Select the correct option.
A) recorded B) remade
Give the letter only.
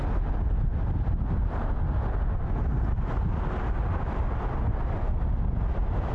A